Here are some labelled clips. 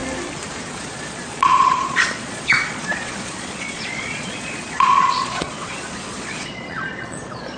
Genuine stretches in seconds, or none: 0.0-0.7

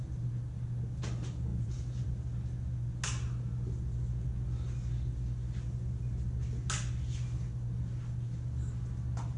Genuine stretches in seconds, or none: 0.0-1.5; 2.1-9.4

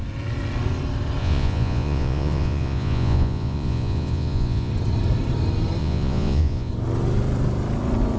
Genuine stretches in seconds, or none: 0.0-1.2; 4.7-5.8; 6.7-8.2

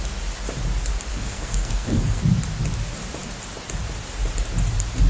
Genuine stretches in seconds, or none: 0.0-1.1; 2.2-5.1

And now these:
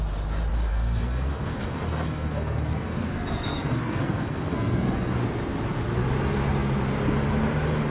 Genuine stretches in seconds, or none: 0.0-0.5; 5.2-7.9

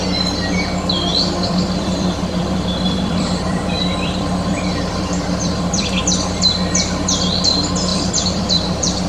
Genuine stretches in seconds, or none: 0.0-1.1; 6.0-7.9